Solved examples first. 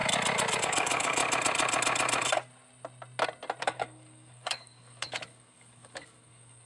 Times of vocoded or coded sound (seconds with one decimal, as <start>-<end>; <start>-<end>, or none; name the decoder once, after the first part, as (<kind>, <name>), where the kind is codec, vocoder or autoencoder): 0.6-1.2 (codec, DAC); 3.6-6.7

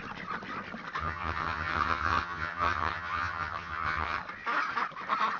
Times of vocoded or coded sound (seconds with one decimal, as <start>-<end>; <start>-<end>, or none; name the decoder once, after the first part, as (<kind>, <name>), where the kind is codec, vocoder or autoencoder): 1.0-4.2 (vocoder, HiFi-GAN)

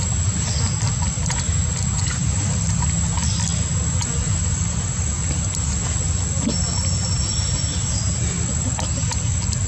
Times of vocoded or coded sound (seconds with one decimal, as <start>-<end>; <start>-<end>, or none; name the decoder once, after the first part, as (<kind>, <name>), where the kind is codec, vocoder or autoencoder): 2.2-2.8 (vocoder, BigVGAN v2)

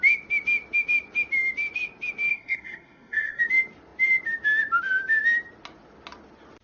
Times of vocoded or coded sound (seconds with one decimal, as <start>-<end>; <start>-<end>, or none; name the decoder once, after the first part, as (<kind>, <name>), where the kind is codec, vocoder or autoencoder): 2.3-3.4 (codec, SNAC)

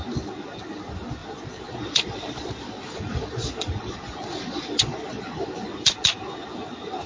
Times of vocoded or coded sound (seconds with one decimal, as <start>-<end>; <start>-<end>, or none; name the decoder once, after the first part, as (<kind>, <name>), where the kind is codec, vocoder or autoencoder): 1.2-5.5 (vocoder, Vocos)